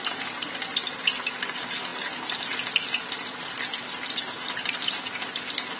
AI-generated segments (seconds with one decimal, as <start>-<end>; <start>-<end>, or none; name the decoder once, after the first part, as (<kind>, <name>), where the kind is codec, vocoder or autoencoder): none